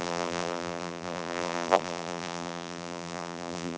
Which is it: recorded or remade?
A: remade